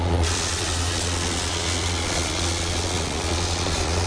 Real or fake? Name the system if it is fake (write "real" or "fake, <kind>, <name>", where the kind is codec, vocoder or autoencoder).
fake, vocoder, Vocos